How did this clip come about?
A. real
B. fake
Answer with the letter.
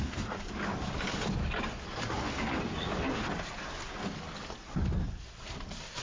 A